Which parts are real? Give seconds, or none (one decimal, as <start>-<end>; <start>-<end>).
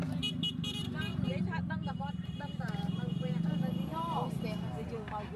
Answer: 0.0-1.1; 3.3-3.9; 4.4-5.4